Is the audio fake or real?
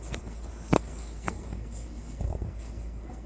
fake